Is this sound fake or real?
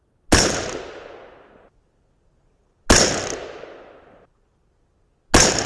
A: real